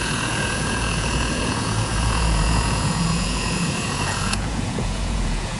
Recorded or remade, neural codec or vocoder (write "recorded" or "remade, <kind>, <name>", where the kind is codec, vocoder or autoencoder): remade, vocoder, Vocos